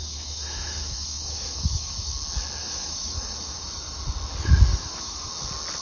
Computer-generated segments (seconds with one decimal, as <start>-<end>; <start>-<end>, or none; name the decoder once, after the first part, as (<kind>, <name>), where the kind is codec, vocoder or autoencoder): 0.0-2.1 (autoencoder, DAC-VAE); 2.6-4.0; 4.7-5.3